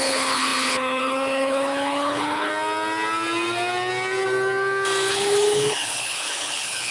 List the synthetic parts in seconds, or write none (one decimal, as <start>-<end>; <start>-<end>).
0.0-2.5; 5.1-6.9